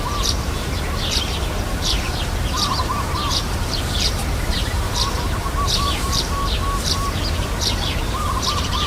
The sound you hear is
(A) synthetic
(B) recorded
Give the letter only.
A